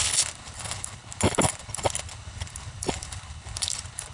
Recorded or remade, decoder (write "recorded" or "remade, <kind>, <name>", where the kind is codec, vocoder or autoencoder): remade, codec, HILCodec